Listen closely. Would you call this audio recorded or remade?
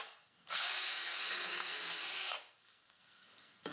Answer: remade